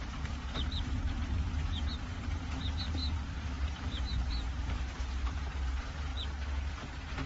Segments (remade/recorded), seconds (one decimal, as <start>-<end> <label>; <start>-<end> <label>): 0.0-1.2 remade; 1.2-2.2 recorded; 2.2-6.1 remade; 6.1-6.7 recorded; 6.7-7.3 remade